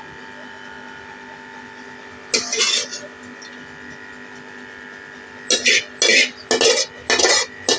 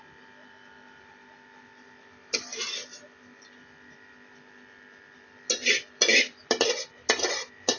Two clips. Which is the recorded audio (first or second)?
first